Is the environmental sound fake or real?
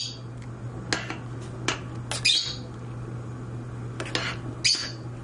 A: real